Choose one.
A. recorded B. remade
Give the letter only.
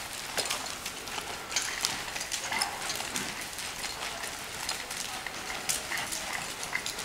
A